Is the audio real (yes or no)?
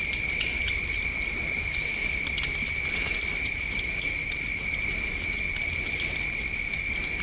no